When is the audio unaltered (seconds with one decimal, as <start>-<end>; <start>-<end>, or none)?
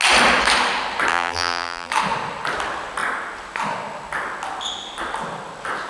0.0-1.1; 1.9-5.9